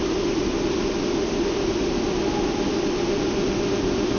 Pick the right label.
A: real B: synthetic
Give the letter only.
A